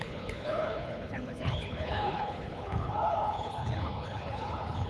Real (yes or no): no